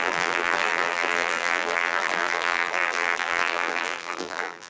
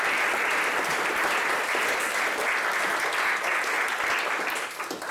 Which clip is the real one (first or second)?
second